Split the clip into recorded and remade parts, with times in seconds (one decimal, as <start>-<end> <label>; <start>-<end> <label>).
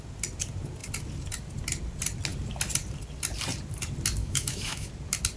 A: 0.0-4.2 recorded; 4.2-4.9 remade; 4.9-5.4 recorded